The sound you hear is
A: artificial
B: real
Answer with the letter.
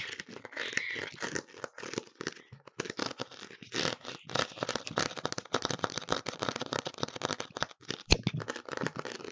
B